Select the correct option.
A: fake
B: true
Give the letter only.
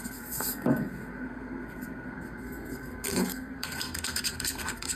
A